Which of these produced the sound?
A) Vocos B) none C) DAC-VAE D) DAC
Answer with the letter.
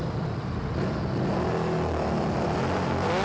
B